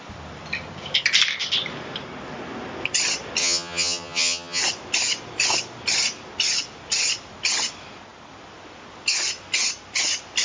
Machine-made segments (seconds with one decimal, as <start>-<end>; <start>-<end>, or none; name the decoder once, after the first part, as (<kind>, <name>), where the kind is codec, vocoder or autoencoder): 3.4-4.6 (vocoder, HiFi-GAN)